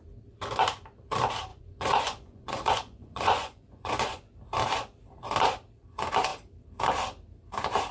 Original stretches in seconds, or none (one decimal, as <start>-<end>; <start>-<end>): 0.0-1.5; 4.3-7.9